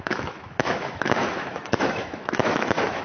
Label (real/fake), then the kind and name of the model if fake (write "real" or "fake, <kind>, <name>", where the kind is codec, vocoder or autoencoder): fake, autoencoder, DAC-VAE